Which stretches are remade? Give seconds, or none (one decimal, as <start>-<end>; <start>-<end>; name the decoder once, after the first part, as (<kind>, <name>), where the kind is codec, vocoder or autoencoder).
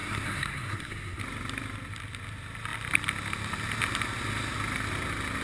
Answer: 0.0-1.2 (codec, SNAC)